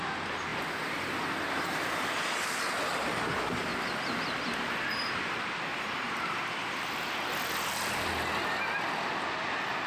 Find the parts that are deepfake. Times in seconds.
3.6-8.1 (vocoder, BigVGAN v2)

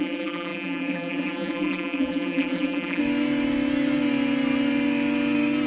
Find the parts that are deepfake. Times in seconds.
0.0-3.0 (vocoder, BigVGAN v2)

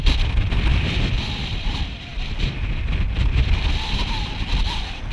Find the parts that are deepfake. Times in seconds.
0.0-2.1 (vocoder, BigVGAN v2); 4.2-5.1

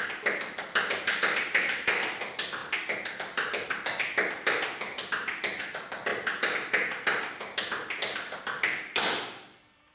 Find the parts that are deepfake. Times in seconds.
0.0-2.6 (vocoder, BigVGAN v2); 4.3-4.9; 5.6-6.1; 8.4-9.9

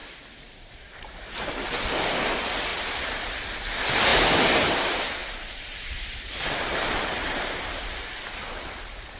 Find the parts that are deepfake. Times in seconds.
0.0-1.5 (vocoder, BigVGAN v2); 2.7-3.3; 5.2-8.3